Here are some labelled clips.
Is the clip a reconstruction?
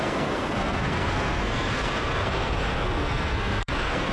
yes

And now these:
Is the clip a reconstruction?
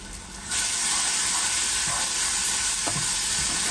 no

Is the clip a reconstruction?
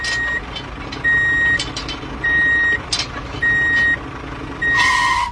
no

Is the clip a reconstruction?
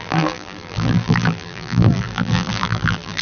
yes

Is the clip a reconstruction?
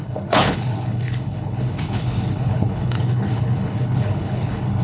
yes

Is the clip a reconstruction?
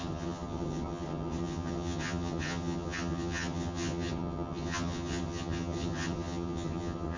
yes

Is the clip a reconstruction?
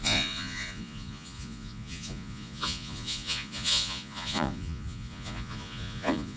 yes